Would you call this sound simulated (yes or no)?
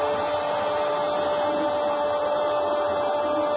no